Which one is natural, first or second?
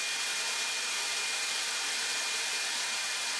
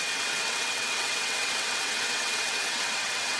first